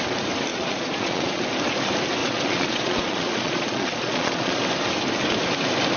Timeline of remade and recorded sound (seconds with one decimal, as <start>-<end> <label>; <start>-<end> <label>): 0.0-0.5 recorded; 0.5-1.4 remade; 1.4-2.2 recorded; 2.2-4.6 remade; 4.6-6.0 recorded